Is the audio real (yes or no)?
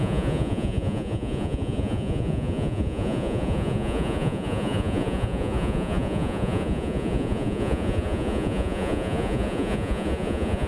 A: no